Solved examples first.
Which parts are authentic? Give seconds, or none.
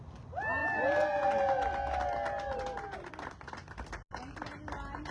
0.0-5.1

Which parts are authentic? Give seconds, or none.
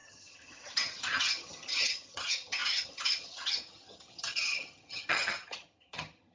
none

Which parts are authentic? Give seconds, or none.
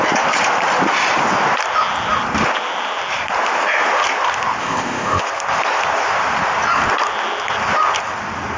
0.0-4.6; 5.2-8.6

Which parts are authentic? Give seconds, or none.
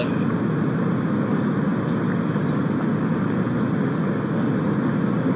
0.0-5.4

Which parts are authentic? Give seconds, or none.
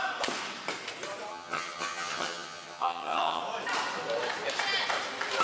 0.0-1.3; 3.4-5.4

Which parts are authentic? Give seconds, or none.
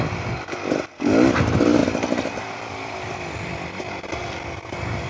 0.0-1.8; 3.9-5.1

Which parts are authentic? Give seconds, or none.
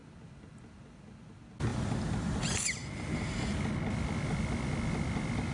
0.0-1.7; 2.4-5.5